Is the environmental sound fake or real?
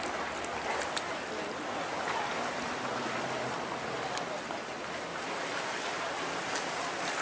real